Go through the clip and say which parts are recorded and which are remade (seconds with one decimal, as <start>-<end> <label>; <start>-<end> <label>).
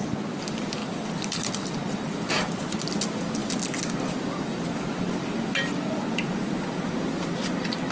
0.0-0.8 recorded; 0.8-2.8 remade; 2.8-7.9 recorded